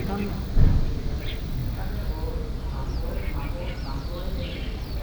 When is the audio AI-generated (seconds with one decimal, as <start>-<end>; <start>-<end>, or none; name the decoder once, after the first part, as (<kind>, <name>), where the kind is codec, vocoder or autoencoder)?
none